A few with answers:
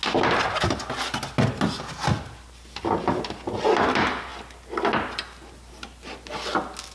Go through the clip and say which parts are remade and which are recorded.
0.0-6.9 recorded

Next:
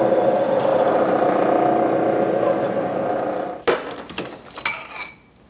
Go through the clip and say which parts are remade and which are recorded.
0.0-5.5 recorded

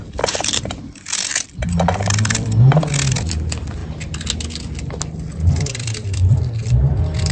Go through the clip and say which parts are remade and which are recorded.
0.0-3.8 remade; 3.8-5.5 recorded; 5.5-7.3 remade

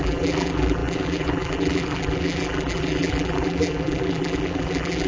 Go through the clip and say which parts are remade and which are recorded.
0.0-5.1 remade